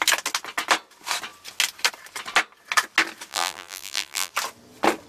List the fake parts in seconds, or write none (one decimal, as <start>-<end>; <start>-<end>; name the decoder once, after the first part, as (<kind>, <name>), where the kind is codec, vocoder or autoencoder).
3.3-4.3 (vocoder, BigVGAN v2)